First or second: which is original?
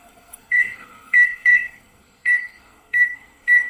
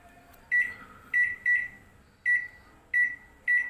second